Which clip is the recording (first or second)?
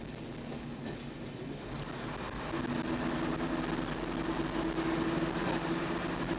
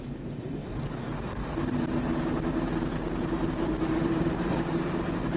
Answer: first